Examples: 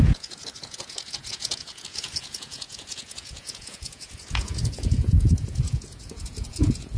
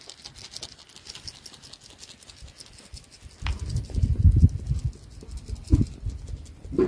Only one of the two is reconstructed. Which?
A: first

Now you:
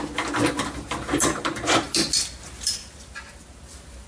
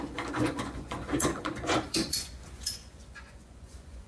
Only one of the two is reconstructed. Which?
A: second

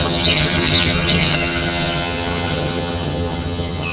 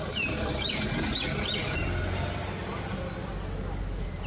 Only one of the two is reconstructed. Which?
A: first